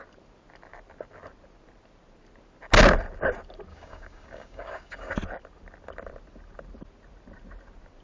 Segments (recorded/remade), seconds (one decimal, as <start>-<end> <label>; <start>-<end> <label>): 0.0-3.7 recorded; 3.7-5.1 remade; 5.1-8.0 recorded